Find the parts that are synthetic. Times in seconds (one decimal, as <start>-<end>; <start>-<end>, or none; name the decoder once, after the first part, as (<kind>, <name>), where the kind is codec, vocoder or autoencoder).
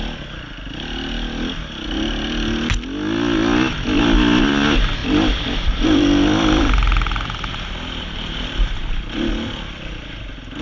5.0-9.3 (vocoder, BigVGAN v2)